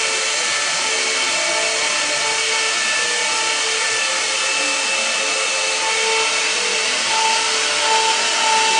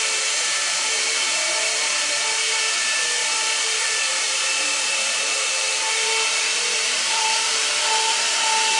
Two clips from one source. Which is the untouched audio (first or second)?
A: first